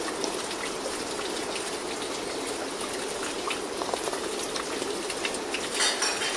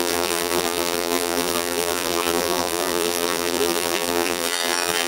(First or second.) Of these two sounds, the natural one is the first